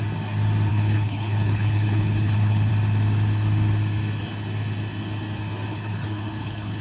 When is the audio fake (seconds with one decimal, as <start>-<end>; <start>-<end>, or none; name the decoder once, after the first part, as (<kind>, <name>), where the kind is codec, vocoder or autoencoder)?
0.7-2.7 (codec, HILCodec); 5.7-6.8